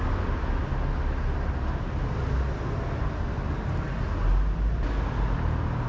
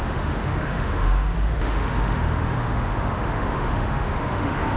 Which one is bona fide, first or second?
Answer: first